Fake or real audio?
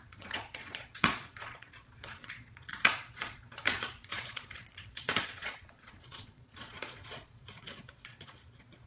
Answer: fake